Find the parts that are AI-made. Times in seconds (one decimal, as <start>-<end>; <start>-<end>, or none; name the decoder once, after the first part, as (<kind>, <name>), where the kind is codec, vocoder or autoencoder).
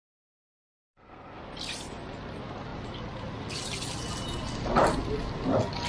0.8-1.4 (codec, SNAC)